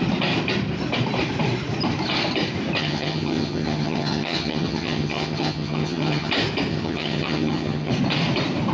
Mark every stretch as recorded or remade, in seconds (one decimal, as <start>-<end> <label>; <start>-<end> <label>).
0.0-2.8 recorded; 2.8-6.3 remade; 6.3-6.7 recorded; 6.7-7.9 remade; 7.9-8.7 recorded